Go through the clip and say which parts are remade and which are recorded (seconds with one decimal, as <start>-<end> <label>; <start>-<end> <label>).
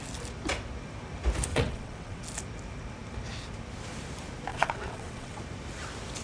0.0-1.5 recorded; 1.5-2.2 remade; 2.2-4.5 recorded; 4.5-5.4 remade; 5.4-6.2 recorded